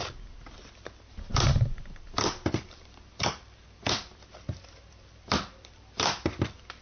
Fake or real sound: fake